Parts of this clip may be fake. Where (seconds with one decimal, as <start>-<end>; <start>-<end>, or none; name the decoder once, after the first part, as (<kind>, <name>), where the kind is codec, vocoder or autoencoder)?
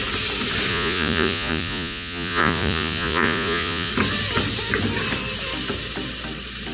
0.7-3.9 (vocoder, Vocos)